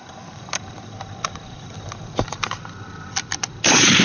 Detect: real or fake real